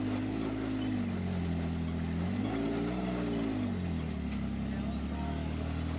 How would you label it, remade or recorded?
recorded